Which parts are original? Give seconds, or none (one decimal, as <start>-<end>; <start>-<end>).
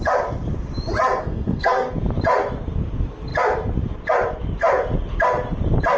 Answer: 0.0-1.2; 1.9-6.0